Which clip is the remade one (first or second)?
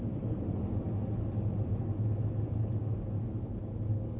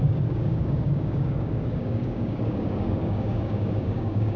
second